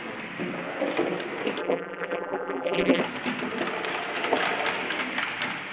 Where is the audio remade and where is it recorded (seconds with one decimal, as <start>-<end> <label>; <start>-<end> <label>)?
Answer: 0.0-1.6 recorded; 1.6-3.0 remade; 3.0-5.7 recorded